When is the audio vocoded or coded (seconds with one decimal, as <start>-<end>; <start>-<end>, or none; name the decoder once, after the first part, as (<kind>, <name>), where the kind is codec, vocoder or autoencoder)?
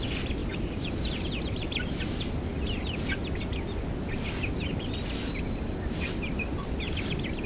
0.4-1.3 (vocoder, BigVGAN v2)